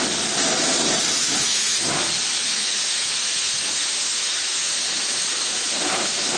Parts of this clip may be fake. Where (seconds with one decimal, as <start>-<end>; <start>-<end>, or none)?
1.2-1.9; 2.4-6.4